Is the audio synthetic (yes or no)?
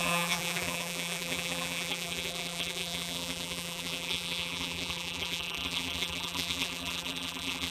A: yes